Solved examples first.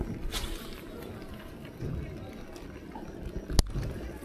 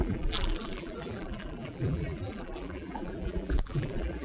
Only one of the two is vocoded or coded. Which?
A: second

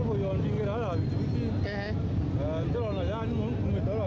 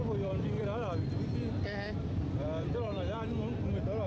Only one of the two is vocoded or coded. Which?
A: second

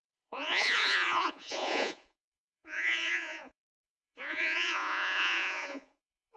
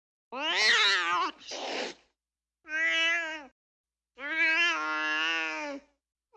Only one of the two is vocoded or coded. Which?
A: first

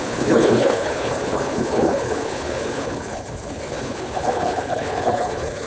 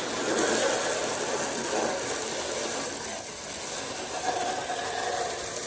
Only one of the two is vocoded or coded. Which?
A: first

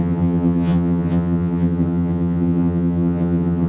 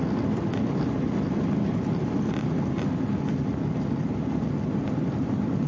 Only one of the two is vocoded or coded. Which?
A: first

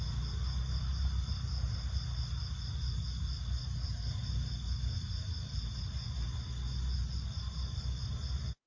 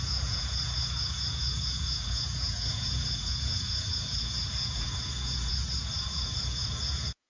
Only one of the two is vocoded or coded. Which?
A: second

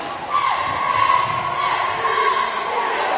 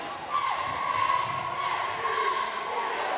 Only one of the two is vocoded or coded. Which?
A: second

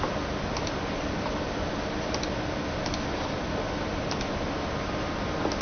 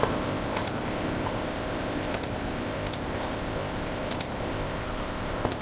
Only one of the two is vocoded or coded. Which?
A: second